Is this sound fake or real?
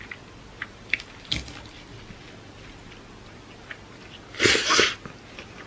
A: real